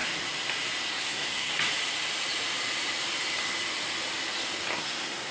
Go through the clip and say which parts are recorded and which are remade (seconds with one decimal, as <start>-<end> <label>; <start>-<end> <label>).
0.0-0.9 recorded; 0.9-1.5 remade; 1.5-4.7 recorded; 4.7-5.3 remade